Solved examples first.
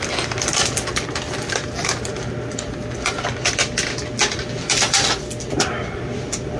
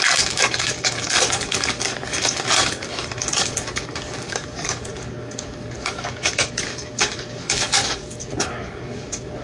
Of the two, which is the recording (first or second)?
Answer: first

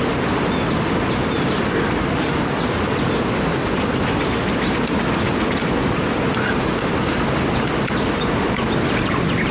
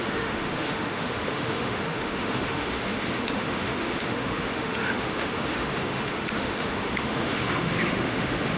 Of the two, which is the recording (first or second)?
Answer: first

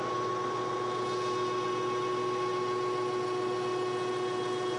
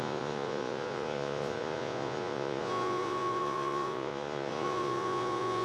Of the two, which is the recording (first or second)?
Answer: first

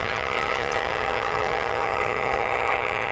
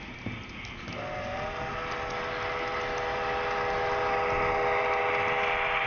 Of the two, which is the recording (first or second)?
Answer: second